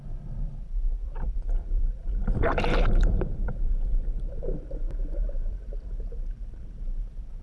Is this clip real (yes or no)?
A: no